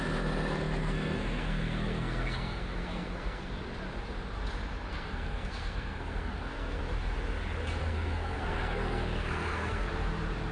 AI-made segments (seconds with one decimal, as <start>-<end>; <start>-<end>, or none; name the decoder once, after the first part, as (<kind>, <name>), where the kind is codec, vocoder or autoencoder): 0.8-3.5 (codec, SNAC); 4.9-6.8; 7.8-9.9